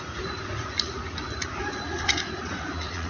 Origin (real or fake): fake